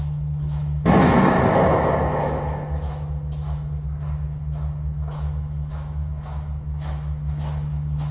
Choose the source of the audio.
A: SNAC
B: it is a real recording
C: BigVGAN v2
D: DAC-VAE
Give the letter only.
D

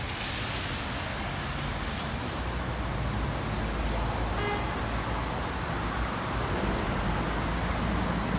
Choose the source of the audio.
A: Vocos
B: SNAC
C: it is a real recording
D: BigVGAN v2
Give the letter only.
C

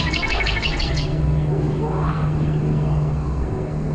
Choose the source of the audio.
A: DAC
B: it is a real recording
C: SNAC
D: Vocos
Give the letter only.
C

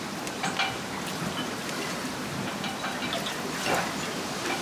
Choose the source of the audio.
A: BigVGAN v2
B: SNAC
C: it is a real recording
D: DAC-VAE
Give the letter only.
C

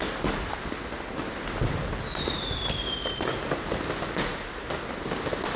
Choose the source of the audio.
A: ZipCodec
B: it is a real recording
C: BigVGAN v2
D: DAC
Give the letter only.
B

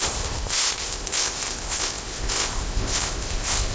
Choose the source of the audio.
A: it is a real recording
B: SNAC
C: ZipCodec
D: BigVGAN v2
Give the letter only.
C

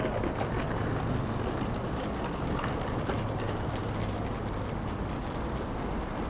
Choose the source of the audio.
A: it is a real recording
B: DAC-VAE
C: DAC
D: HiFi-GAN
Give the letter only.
A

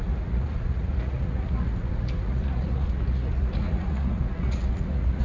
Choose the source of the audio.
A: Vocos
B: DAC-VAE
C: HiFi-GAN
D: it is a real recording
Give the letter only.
A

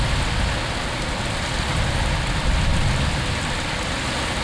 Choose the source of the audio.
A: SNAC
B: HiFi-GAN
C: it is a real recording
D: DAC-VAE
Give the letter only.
C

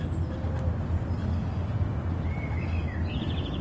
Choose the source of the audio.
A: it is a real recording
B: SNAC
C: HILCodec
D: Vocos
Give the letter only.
A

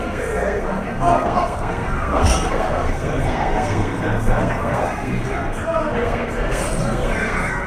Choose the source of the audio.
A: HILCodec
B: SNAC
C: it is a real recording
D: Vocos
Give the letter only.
B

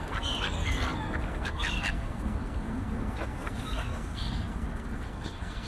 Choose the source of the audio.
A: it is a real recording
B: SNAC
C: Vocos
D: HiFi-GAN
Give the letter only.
B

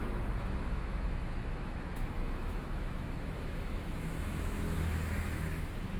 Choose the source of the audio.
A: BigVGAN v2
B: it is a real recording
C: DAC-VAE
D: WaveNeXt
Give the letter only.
C